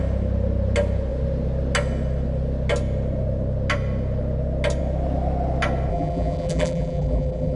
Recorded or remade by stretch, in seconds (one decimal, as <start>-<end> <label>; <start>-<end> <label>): 0.0-5.9 recorded; 5.9-7.6 remade